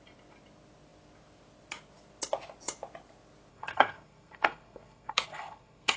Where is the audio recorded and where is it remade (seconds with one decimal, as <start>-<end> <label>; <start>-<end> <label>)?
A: 0.0-3.5 recorded; 3.5-6.0 remade